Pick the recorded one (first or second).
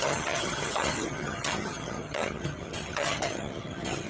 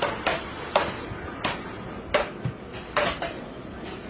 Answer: second